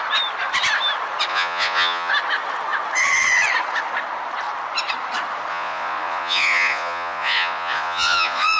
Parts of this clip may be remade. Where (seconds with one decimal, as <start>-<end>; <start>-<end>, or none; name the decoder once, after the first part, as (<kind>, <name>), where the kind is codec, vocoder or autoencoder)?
1.3-2.1 (vocoder, Vocos); 5.5-8.6